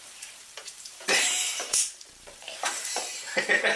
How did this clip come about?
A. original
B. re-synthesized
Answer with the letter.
B